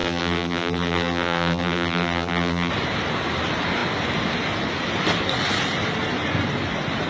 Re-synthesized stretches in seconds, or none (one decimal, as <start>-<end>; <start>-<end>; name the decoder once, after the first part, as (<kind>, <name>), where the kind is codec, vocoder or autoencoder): 0.0-2.7 (vocoder, BigVGAN v2)